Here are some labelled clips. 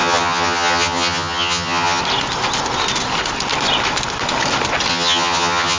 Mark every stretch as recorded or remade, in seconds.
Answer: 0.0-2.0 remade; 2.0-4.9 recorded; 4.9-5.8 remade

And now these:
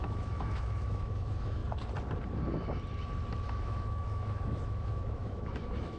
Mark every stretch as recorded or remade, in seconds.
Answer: 0.0-1.6 remade; 1.6-3.5 recorded; 3.5-6.0 remade

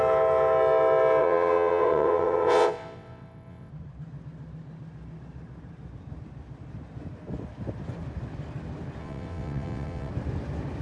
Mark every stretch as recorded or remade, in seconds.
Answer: 0.0-1.2 recorded; 1.2-3.7 remade; 3.7-9.0 recorded; 9.0-10.1 remade; 10.1-10.8 recorded

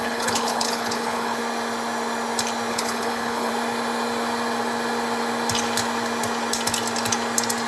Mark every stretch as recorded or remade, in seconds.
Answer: 0.0-1.4 remade; 1.4-2.7 recorded; 2.7-3.5 remade; 3.5-7.7 recorded

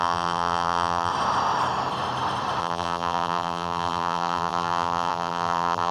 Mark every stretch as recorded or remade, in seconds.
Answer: 0.0-1.1 remade; 1.1-2.6 recorded; 2.6-5.9 remade

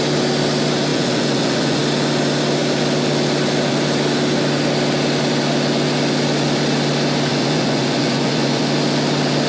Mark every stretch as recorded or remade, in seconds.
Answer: 0.0-0.9 recorded; 0.9-1.8 remade; 1.8-7.3 recorded; 7.3-8.6 remade; 8.6-9.5 recorded